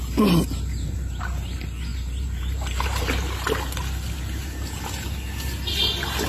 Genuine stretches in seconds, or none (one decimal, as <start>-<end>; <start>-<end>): 0.0-6.3

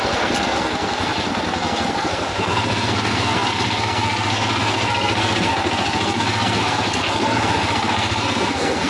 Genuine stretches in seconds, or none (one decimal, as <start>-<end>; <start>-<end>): none

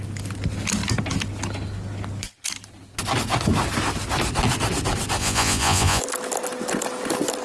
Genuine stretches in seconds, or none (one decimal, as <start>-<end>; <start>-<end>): 0.0-5.2; 6.0-7.4

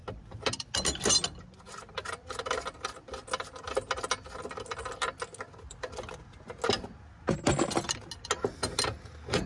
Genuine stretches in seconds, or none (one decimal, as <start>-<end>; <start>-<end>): 0.0-9.5

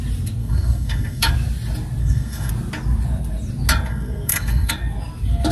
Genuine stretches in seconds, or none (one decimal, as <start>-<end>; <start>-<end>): 0.0-0.4; 1.3-2.0; 2.5-3.9; 4.7-5.5